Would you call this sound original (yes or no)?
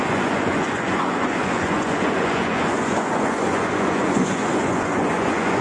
no